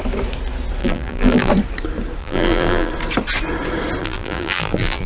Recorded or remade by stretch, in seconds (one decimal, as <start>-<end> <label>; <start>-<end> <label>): 0.0-0.8 recorded; 0.8-1.5 remade; 1.5-2.2 recorded; 2.2-2.9 remade; 2.9-4.0 recorded; 4.0-5.1 remade